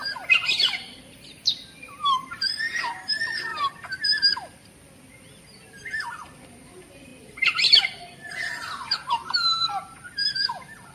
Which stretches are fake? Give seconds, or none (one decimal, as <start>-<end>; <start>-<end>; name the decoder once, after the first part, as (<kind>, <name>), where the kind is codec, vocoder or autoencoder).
0.0-3.5 (vocoder, BigVGAN v2); 4.6-10.9